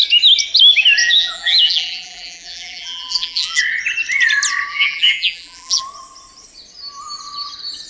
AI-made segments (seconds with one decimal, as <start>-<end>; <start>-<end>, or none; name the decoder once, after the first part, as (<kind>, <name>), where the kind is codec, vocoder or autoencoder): 1.0-3.6 (vocoder, BigVGAN v2); 4.7-5.8